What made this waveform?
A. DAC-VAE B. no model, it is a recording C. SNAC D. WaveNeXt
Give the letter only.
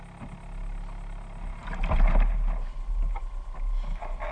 B